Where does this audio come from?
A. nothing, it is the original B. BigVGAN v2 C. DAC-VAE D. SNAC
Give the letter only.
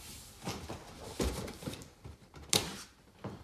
A